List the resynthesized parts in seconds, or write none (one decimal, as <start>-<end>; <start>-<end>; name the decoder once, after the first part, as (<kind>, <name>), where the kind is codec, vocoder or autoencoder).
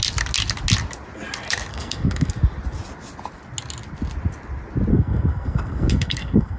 1.7-2.3 (codec, SNAC); 4.9-6.6